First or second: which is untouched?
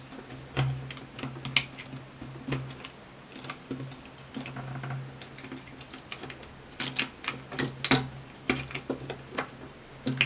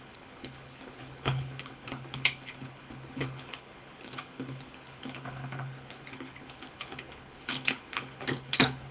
first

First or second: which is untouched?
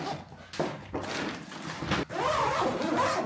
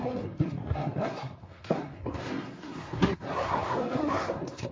first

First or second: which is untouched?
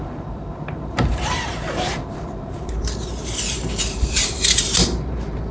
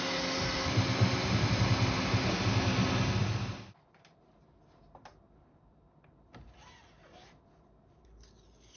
second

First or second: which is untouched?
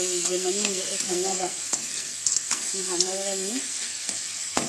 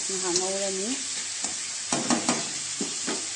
second